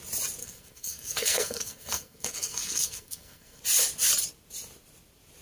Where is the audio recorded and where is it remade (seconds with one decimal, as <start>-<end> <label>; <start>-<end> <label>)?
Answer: 0.0-0.4 recorded; 0.4-3.6 remade; 3.6-5.4 recorded